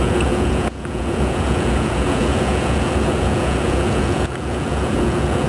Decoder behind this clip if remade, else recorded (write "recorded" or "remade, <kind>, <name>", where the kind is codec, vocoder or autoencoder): remade, vocoder, Vocos